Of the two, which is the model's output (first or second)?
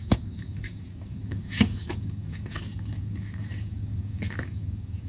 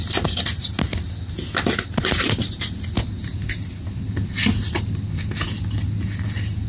first